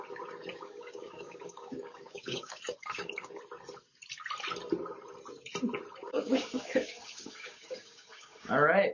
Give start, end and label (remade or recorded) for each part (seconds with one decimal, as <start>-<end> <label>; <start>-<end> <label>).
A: 0.0-0.5 recorded; 0.5-3.4 remade; 3.4-6.0 recorded; 6.0-8.5 remade; 8.5-8.9 recorded